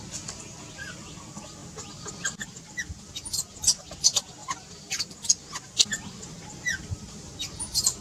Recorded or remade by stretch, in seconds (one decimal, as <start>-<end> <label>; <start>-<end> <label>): 0.0-8.0 recorded